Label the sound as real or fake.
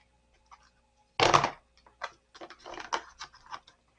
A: real